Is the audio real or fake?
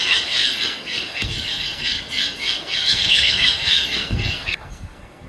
fake